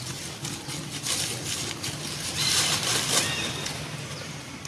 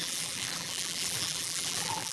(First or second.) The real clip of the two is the first